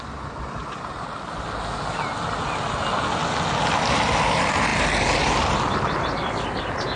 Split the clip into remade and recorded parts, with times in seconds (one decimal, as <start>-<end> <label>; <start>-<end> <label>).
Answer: 0.0-7.0 recorded